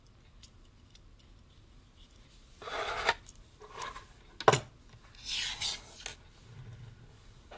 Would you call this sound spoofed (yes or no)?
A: no